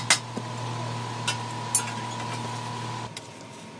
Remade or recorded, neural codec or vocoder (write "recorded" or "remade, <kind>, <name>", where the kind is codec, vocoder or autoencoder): recorded